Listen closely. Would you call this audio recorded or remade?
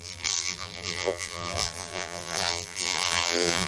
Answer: remade